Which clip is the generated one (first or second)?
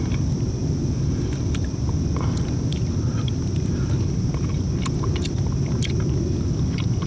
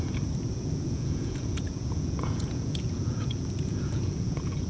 second